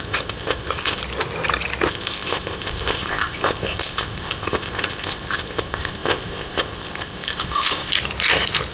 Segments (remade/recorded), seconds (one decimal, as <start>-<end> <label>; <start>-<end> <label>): 0.0-1.0 remade; 1.0-1.9 recorded; 1.9-7.9 remade; 7.9-8.7 recorded